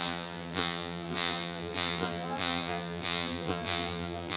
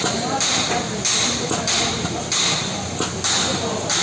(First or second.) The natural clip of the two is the second